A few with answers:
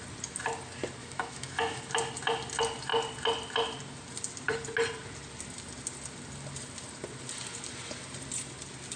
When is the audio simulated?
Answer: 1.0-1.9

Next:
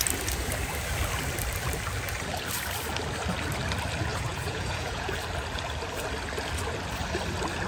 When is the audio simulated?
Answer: 4.1-5.1

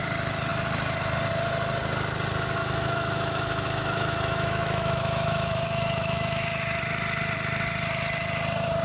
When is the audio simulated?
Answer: 2.6-6.8

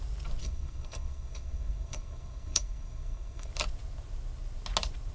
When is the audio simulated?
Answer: 0.4-3.5

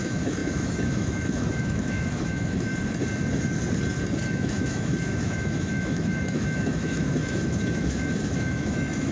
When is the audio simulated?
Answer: 0.0-2.7; 4.3-9.1

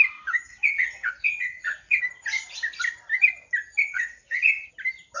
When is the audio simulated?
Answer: 0.5-2.0; 3.8-4.7

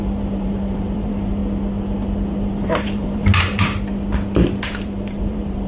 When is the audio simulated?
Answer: 0.0-1.4; 2.4-3.3; 4.7-5.7